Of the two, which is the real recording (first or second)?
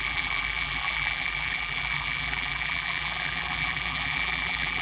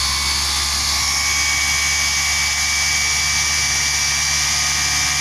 second